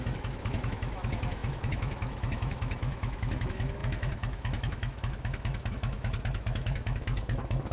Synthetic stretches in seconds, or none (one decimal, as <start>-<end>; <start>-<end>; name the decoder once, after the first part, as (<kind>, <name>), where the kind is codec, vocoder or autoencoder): 0.0-7.7 (autoencoder, DAC-VAE)